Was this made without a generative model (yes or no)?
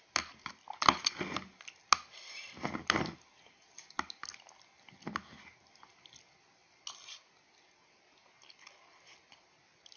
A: yes